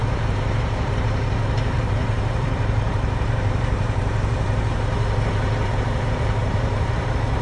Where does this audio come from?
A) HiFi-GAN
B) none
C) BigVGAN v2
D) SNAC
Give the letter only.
C